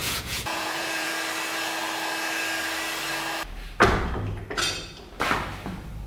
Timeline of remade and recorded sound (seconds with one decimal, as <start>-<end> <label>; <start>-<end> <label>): 0.0-1.1 remade; 1.1-6.1 recorded